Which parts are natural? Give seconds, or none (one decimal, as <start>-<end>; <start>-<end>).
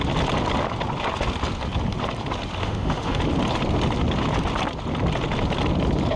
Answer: 0.0-2.6; 3.2-6.2